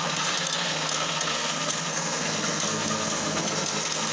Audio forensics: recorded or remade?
remade